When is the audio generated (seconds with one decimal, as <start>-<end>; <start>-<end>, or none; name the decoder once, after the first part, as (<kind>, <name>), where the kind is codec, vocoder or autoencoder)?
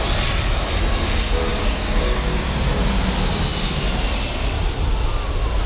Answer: 1.5-2.6 (codec, DAC)